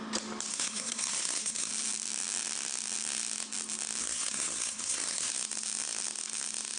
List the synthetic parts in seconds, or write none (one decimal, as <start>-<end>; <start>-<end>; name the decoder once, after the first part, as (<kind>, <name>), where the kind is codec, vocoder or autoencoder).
0.5-1.7 (codec, SNAC); 4.0-5.3